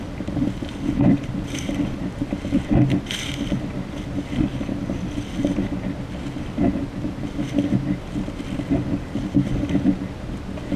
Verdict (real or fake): real